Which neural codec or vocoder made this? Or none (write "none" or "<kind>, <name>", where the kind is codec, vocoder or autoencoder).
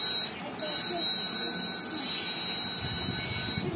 none